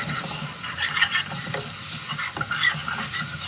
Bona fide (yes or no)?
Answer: yes